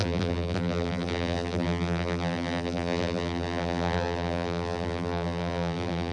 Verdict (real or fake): fake